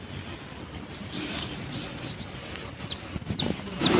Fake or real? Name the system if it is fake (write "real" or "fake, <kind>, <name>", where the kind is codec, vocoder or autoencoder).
real